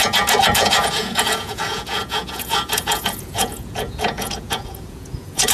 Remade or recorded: remade